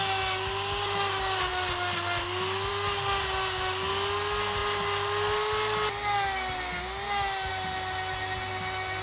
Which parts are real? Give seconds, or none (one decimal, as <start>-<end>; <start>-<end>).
0.0-9.0